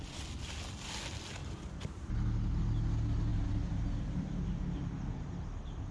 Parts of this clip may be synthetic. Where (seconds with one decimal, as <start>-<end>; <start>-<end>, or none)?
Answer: 1.4-2.1; 3.3-5.3